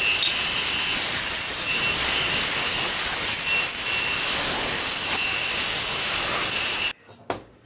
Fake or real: real